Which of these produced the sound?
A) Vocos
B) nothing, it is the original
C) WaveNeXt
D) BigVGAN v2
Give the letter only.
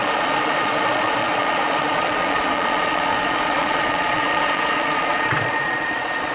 A